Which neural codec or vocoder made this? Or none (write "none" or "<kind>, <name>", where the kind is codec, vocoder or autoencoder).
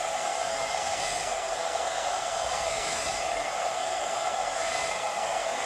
codec, SNAC